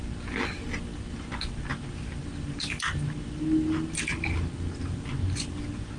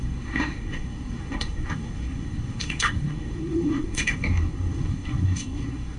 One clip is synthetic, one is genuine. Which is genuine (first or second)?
first